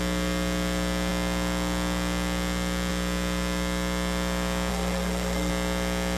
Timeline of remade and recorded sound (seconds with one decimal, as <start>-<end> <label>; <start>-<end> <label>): 0.0-4.7 recorded; 4.7-5.5 remade; 5.5-6.2 recorded

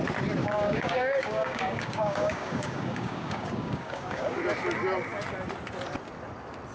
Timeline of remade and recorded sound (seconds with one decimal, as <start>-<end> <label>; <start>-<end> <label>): 0.0-0.4 recorded; 0.4-4.4 remade; 4.4-6.7 recorded

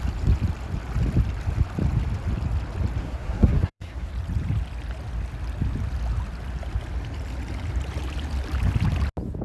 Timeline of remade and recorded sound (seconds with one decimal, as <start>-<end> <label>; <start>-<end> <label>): 0.0-3.0 recorded; 3.0-4.1 remade; 4.1-9.4 recorded